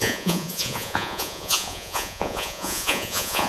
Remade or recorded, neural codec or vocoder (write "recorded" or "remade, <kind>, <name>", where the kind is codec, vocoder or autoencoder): remade, vocoder, Vocos